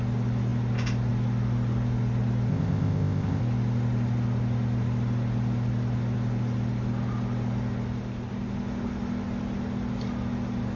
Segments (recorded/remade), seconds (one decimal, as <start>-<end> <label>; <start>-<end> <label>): 0.0-2.5 recorded; 2.5-3.4 remade; 3.4-10.8 recorded